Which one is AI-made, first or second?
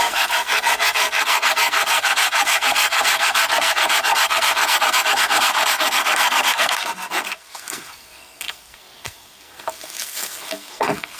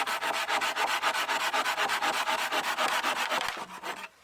first